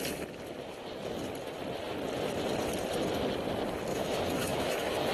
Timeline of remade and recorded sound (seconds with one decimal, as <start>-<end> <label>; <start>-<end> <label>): 0.0-3.9 recorded; 3.9-5.1 remade